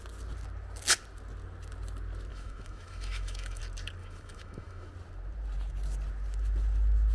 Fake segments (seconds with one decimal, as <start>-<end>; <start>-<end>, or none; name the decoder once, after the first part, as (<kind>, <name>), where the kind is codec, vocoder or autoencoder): 2.3-3.6 (autoencoder, DAC-VAE); 4.0-4.9